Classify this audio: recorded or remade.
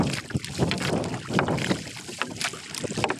recorded